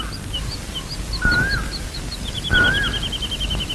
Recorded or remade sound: recorded